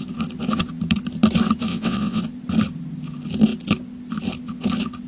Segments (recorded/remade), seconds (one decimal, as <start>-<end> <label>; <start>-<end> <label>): 0.0-1.7 recorded; 1.7-2.2 remade; 2.2-5.1 recorded